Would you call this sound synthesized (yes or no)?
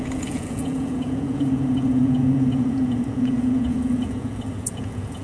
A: yes